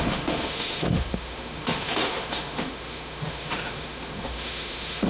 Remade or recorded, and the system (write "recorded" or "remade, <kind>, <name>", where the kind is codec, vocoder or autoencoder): remade, autoencoder, DAC-VAE